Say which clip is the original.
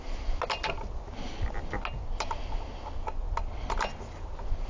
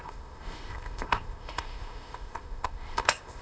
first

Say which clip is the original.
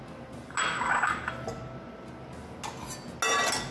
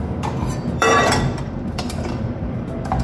first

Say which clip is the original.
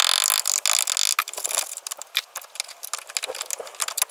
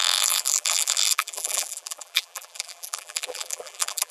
first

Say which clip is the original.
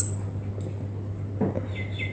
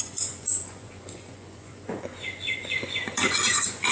first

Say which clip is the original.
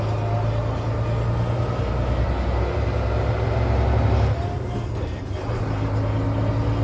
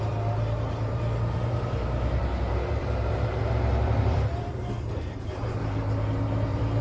first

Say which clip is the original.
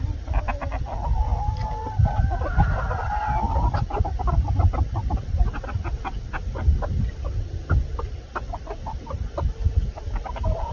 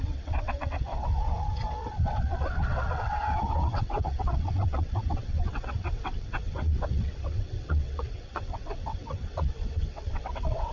first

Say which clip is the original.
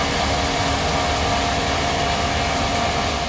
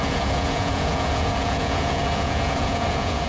first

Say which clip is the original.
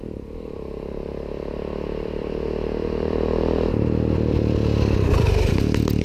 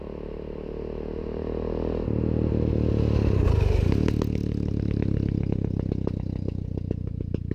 second